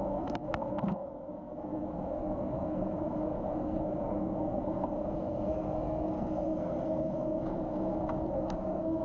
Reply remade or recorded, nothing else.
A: remade